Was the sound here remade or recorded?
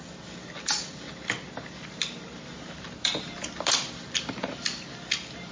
recorded